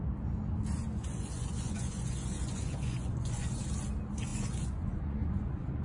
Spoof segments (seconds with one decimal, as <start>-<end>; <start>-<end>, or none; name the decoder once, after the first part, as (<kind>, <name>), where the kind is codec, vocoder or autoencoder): 0.8-3.6 (vocoder, Vocos); 4.3-5.8